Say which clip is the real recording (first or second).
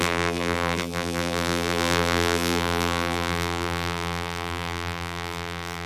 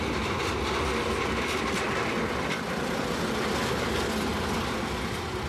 second